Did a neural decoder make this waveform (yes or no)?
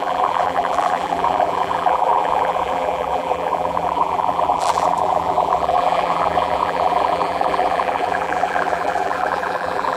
yes